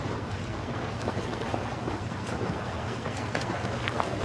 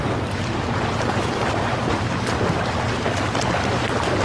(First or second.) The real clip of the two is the second